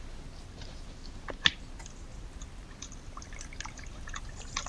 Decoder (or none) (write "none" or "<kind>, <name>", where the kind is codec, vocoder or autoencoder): none